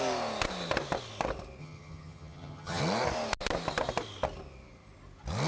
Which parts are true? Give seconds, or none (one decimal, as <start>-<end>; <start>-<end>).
0.0-1.6; 2.8-5.5